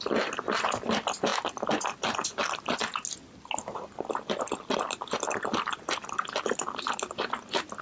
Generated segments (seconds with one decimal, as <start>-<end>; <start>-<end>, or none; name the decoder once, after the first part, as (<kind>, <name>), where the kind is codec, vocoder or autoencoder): none